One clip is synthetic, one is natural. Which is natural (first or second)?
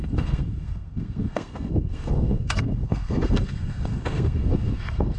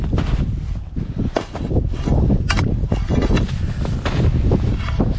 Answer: second